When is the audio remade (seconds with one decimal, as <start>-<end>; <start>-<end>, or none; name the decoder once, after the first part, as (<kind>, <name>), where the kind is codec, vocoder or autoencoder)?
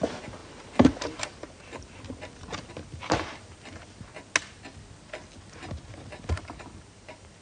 0.0-4.1 (vocoder, BigVGAN v2); 6.3-7.4